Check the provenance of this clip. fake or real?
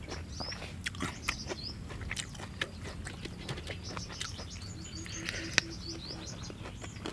real